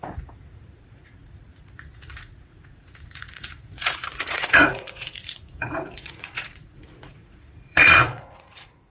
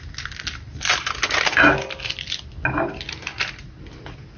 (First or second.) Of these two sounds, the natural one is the second